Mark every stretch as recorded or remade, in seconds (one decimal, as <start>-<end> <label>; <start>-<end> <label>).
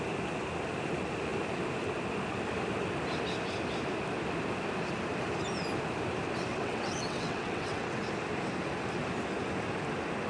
0.0-6.5 recorded; 6.5-8.0 remade; 8.0-10.3 recorded